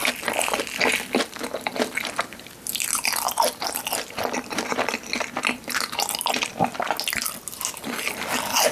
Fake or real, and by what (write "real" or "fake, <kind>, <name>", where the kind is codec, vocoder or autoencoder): real